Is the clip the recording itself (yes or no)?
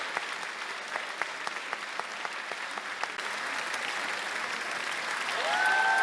yes